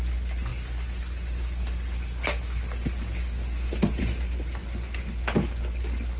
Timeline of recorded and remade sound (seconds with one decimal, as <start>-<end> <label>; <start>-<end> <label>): 0.0-6.2 recorded